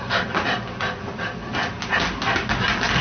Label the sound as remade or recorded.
recorded